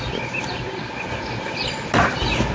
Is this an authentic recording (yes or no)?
yes